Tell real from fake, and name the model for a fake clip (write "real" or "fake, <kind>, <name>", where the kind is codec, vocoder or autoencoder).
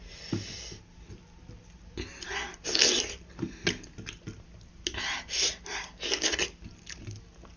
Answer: real